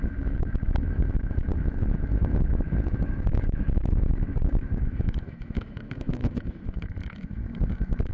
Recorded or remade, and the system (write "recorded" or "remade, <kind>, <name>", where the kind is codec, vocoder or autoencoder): remade, autoencoder, DAC-VAE